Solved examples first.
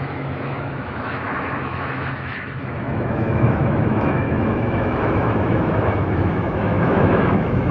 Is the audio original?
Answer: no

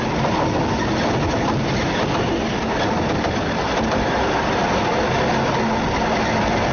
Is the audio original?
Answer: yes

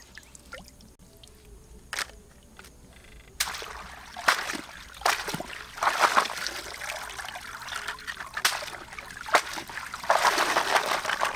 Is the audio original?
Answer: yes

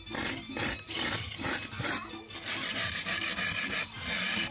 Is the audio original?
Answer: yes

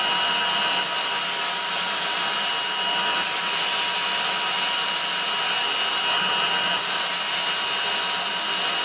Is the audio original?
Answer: yes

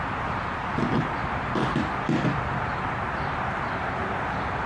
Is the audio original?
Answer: yes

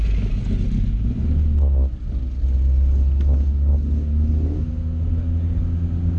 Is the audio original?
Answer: yes